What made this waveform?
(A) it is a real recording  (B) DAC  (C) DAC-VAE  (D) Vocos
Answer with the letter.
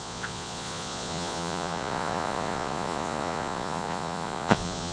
D